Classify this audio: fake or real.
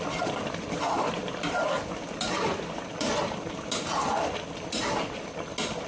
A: real